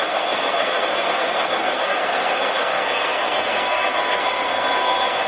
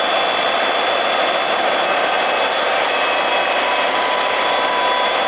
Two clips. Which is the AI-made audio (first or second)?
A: first